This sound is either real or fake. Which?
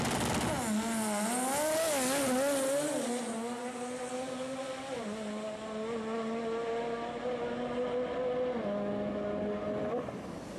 real